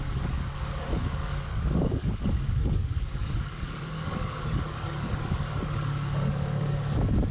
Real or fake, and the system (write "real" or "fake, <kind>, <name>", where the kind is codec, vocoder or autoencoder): fake, codec, DAC